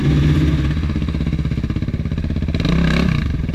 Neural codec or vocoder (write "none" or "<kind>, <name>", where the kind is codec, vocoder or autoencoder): none